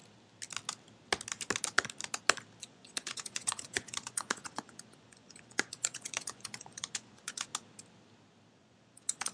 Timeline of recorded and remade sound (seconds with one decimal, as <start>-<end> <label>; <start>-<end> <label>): 0.0-2.6 recorded; 2.6-7.5 remade; 7.5-8.5 recorded; 8.5-9.3 remade

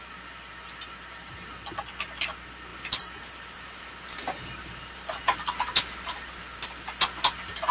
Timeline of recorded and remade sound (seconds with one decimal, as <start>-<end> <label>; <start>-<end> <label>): 0.0-7.7 recorded

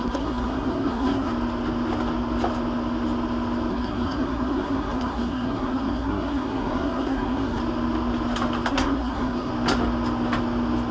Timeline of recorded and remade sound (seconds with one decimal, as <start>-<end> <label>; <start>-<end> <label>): 0.0-1.3 remade; 1.3-3.7 recorded; 3.7-7.6 remade; 7.6-8.7 recorded; 8.7-9.5 remade; 9.5-10.9 recorded

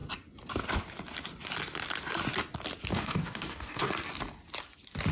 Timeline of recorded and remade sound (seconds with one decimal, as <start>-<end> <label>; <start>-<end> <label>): 0.0-2.9 recorded; 2.9-3.9 remade; 3.9-5.1 recorded

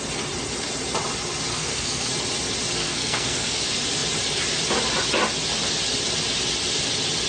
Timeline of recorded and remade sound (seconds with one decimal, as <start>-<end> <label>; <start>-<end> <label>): 0.0-1.5 recorded; 1.5-2.1 remade; 2.1-2.8 recorded; 2.8-3.6 remade; 3.6-7.3 recorded

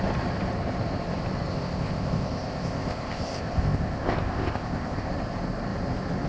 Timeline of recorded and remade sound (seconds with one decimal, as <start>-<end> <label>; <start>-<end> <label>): 0.0-1.5 recorded; 1.5-5.1 remade; 5.1-6.3 recorded